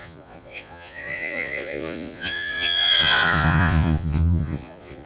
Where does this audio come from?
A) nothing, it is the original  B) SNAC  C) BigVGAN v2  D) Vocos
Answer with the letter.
D